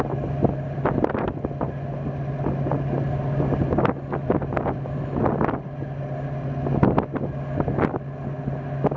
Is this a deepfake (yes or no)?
no